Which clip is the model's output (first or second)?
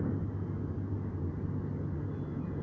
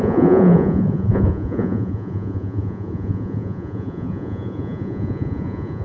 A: second